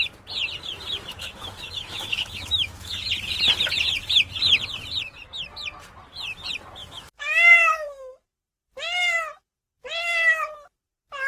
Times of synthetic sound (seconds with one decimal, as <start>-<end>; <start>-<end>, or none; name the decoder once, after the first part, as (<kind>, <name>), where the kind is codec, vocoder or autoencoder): 1.1-3.1 (autoencoder, DAC-VAE); 6.8-8.1